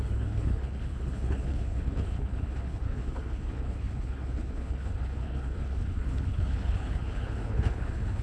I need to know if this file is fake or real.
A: fake